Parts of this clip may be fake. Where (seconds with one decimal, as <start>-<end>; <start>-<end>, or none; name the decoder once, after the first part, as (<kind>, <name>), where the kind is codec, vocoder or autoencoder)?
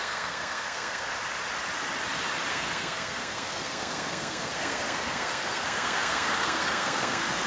0.0-1.1 (codec, SNAC); 2.5-7.5